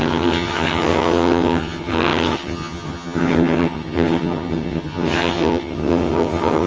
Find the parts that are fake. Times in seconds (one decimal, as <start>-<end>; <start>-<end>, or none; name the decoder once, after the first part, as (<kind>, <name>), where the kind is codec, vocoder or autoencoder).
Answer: 0.0-6.7 (vocoder, HiFi-GAN)